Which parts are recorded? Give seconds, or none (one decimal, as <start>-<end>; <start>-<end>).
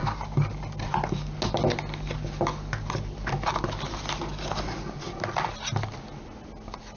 0.0-7.0